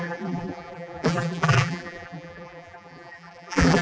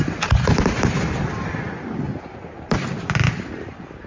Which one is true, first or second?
second